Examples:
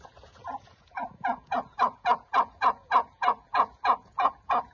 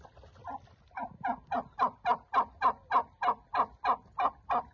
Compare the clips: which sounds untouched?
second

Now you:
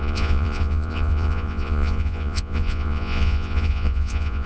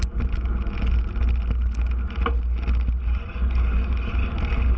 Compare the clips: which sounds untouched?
second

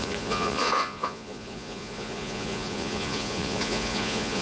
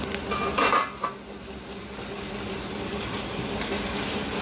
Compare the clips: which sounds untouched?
second